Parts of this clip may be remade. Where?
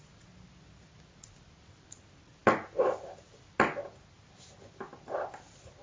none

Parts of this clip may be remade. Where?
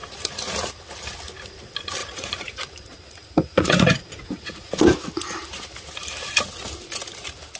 2.0-4.7 (vocoder, Vocos)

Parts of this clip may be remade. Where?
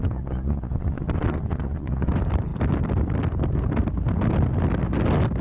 0.0-2.1 (vocoder, Vocos)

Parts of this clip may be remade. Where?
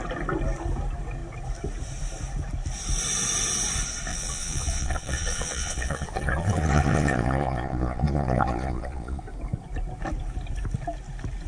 4.1-9.2 (vocoder, Vocos)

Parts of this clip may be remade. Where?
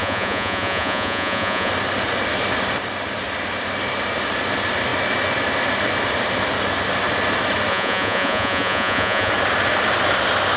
0.0-1.7 (vocoder, Vocos); 7.7-9.3